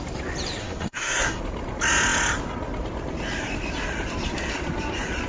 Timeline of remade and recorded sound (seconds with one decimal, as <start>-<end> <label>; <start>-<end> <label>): 0.0-0.6 recorded; 0.6-1.4 remade; 1.4-5.3 recorded